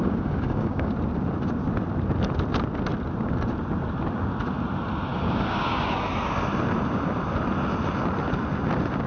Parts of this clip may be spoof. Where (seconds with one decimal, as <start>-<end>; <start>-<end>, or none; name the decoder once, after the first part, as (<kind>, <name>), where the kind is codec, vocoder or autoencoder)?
0.0-0.9 (codec, DAC); 5.1-6.1